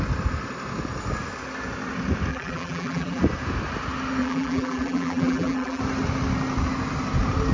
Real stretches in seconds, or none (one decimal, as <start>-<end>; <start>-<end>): 0.0-2.3; 3.2-4.2; 5.8-7.5